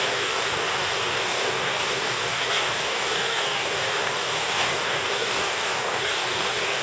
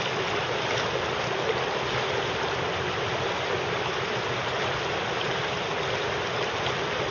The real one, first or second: second